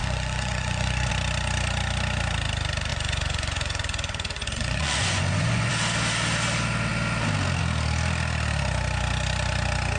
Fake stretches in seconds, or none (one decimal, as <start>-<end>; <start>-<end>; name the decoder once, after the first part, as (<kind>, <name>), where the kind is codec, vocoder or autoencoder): 0.0-1.1 (vocoder, Vocos); 2.9-5.7